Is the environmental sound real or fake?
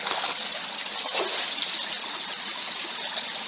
real